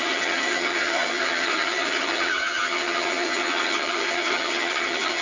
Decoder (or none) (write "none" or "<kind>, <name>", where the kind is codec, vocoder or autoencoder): vocoder, HiFi-GAN